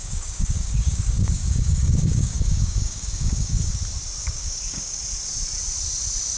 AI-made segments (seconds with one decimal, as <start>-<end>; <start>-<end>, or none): 0.0-3.8; 4.2-5.0